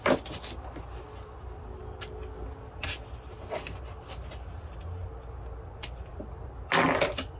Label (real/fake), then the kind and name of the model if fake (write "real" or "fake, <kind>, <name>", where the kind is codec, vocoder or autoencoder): real